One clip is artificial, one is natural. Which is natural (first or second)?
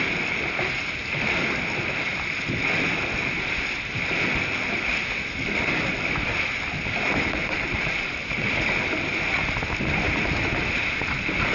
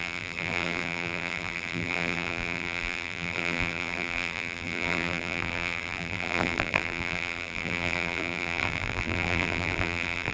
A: first